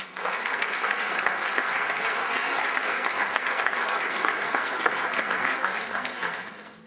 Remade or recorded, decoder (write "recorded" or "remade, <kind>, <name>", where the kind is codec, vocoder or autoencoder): remade, codec, SNAC